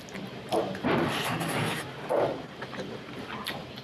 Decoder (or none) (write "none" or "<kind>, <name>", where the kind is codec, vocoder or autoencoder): none